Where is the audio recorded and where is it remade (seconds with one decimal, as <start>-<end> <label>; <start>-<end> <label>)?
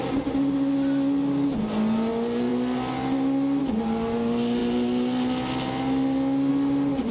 0.0-7.1 recorded